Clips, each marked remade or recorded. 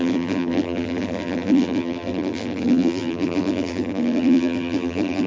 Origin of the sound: remade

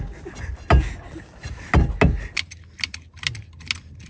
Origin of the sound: recorded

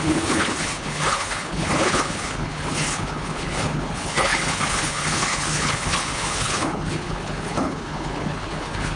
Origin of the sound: remade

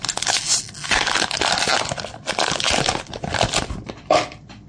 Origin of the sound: recorded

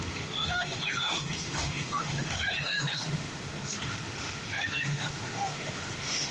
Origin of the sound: remade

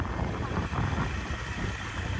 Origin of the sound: recorded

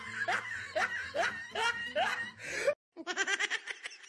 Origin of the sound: recorded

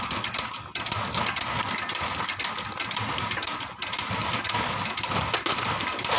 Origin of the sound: recorded